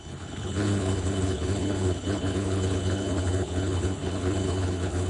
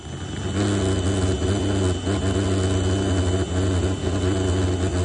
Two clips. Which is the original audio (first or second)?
second